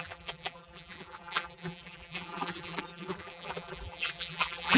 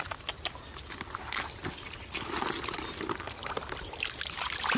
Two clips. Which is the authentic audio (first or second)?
second